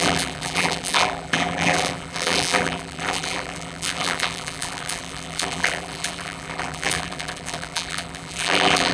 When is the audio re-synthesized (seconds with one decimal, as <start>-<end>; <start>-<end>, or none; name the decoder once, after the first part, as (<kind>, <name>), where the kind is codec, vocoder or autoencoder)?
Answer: 0.0-8.9 (vocoder, BigVGAN v2)